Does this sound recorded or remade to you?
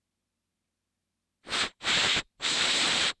remade